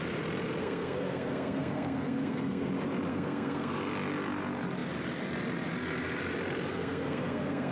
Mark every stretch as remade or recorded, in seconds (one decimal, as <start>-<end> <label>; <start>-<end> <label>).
0.0-0.6 recorded; 0.6-2.7 remade; 2.7-3.1 recorded; 3.1-3.8 remade; 3.8-6.7 recorded; 6.7-7.7 remade